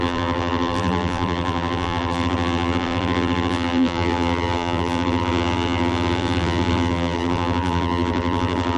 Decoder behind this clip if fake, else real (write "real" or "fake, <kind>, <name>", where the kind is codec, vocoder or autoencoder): fake, vocoder, BigVGAN v2